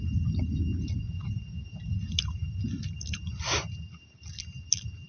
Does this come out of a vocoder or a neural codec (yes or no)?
no